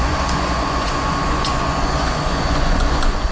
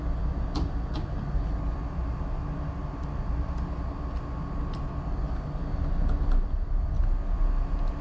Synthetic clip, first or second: first